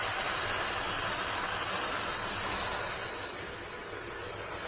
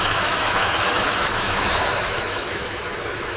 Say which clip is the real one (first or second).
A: first